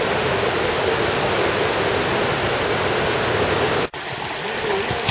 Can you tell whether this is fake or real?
real